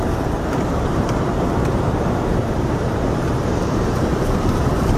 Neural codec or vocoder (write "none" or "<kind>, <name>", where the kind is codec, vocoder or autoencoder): vocoder, BigVGAN v2